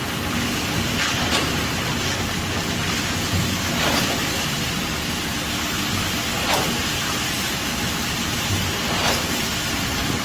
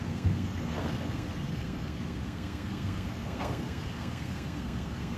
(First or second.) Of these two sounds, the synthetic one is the second